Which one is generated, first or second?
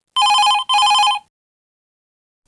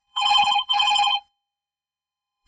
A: second